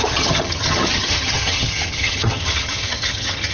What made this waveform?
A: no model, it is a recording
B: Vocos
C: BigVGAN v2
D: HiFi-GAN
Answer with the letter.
D